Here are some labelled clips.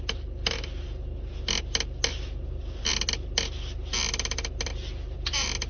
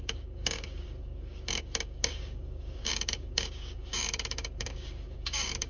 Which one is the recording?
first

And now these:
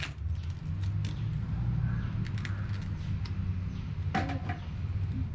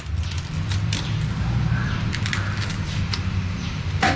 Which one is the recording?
first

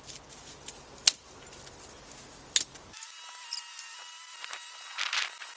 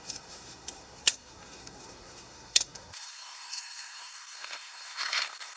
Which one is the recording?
first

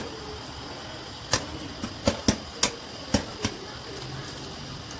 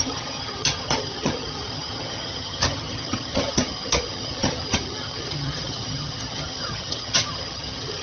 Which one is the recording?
first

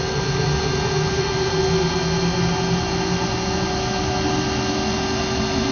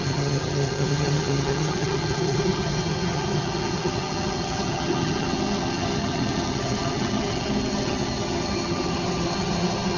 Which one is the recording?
first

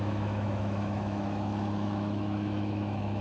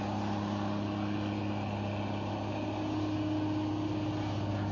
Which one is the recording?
second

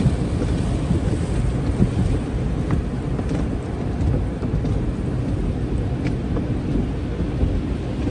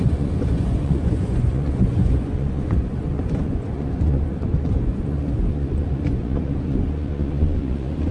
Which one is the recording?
first